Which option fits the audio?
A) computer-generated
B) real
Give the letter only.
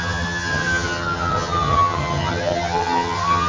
A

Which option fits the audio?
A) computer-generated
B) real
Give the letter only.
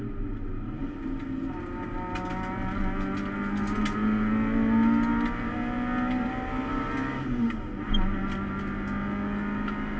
B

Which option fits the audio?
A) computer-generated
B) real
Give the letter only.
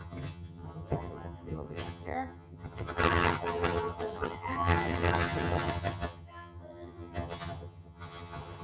A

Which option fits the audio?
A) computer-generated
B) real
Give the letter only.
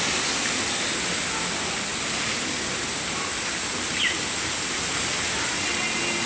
B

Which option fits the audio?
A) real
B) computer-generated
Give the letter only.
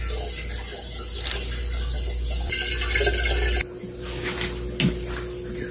A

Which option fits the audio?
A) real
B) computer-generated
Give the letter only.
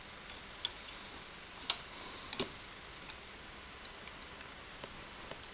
A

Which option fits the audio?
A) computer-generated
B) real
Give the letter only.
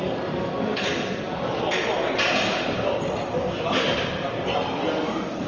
B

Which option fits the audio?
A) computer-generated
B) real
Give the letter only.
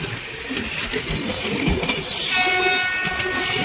B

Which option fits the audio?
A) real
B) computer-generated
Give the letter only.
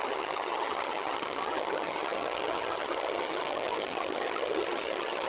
B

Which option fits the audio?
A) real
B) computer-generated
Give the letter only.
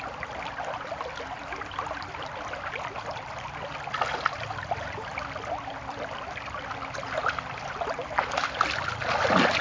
A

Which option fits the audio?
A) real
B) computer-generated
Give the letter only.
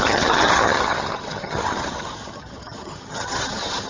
B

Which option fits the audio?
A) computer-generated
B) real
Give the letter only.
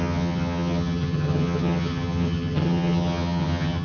A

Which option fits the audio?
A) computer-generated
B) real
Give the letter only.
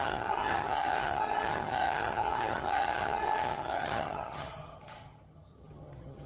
A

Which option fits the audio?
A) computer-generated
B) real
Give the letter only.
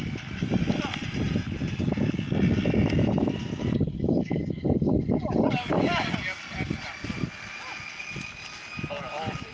B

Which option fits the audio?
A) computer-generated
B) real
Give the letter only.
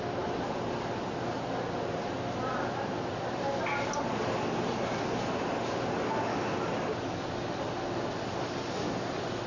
B